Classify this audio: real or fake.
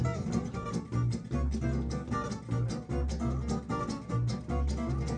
real